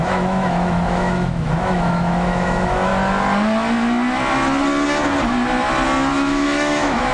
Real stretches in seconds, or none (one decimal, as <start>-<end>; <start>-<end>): 2.9-6.1